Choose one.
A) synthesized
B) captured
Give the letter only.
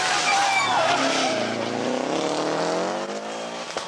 B